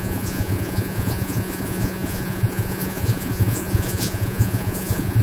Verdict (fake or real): fake